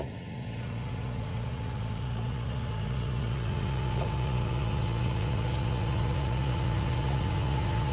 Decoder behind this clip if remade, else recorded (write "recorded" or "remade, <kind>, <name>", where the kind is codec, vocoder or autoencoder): remade, vocoder, Vocos